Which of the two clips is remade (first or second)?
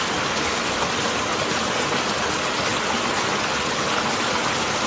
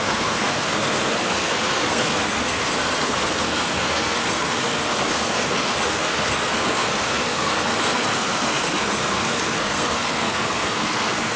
second